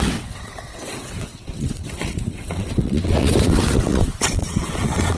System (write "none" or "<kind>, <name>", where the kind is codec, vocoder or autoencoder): vocoder, WaveNeXt